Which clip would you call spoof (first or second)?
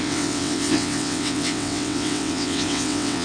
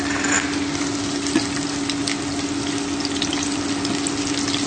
first